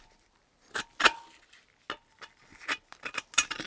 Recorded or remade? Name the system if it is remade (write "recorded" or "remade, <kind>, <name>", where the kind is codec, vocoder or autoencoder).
recorded